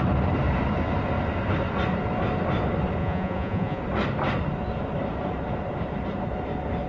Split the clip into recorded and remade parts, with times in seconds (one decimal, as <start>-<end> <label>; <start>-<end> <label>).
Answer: 0.0-3.0 recorded; 3.0-3.8 remade; 3.8-6.9 recorded